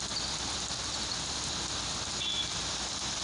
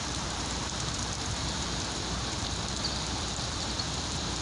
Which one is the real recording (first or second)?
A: first